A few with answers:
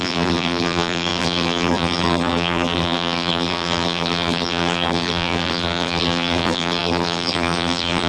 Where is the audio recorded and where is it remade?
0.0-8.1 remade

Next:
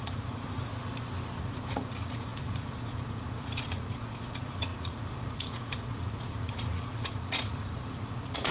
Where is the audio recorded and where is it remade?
0.0-0.7 remade; 0.7-1.4 recorded; 1.4-8.5 remade

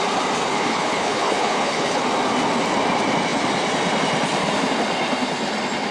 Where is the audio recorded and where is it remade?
0.0-0.6 recorded; 0.6-2.0 remade; 2.0-5.9 recorded

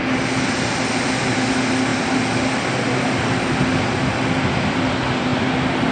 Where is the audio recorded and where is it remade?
0.0-5.9 recorded